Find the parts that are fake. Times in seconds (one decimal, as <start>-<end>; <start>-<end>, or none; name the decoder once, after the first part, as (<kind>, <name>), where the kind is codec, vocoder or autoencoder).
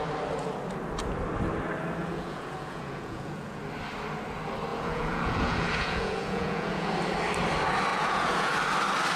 2.0-3.6 (vocoder, Vocos); 4.7-6.9; 7.9-8.5